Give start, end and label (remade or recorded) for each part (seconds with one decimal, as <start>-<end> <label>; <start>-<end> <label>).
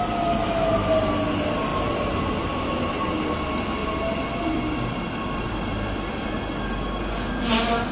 0.0-1.7 recorded; 1.7-3.1 remade; 3.1-3.8 recorded; 3.8-6.4 remade; 6.4-7.9 recorded